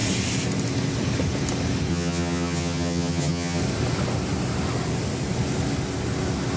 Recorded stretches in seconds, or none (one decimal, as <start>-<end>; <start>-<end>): 0.0-1.9; 3.6-6.6